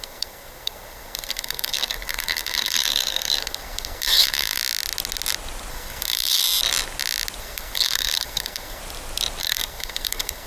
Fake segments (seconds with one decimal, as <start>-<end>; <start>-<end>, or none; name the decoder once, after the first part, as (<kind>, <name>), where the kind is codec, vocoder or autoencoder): 0.0-4.6 (codec, SNAC); 5.7-6.4; 7.4-8.8; 9.4-10.5